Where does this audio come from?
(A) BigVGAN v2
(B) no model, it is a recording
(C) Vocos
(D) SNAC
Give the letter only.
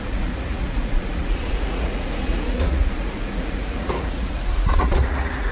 C